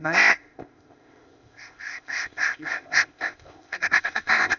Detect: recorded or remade remade